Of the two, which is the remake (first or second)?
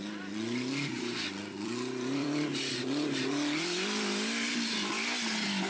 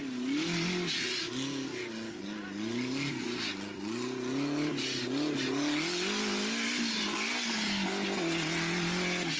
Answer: first